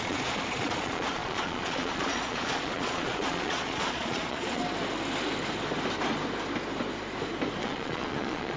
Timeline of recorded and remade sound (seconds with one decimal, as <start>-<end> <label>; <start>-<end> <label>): 0.0-4.6 remade; 4.6-7.6 recorded; 7.6-8.6 remade